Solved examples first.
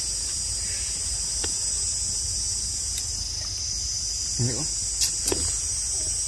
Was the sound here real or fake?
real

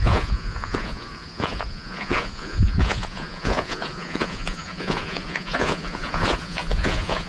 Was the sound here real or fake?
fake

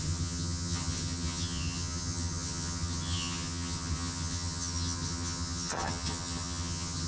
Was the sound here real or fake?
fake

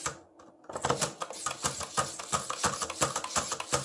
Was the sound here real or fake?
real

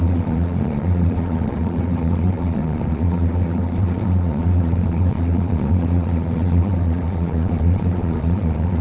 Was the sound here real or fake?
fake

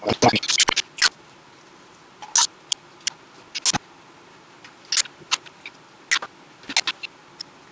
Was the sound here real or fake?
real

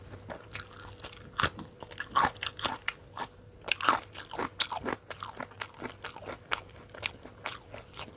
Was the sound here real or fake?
real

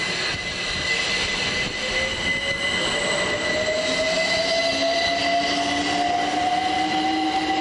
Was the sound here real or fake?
real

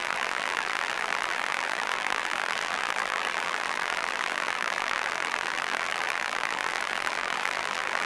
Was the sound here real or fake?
fake